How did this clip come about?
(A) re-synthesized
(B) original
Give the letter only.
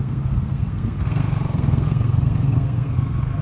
A